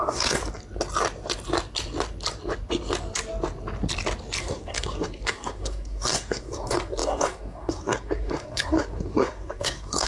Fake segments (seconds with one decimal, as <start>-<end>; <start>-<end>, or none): 0.0-0.4; 4.4-10.1